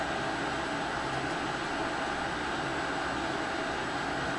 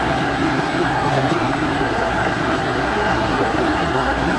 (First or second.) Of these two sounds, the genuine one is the first